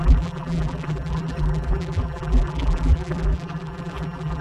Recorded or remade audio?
remade